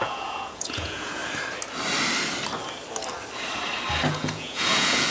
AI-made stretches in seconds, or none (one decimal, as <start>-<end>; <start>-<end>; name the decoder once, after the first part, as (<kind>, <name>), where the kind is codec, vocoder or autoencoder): 0.0-1.2 (vocoder, Vocos); 4.1-5.1